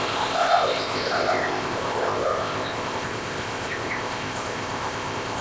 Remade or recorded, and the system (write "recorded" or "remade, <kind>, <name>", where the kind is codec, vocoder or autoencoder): remade, codec, ZipCodec